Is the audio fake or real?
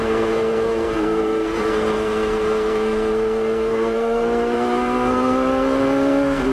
fake